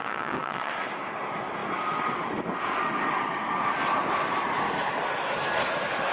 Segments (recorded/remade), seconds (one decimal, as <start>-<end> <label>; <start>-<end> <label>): 0.0-0.7 remade; 0.7-6.1 recorded